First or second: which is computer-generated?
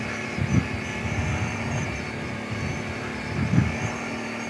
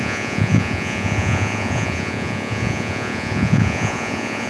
second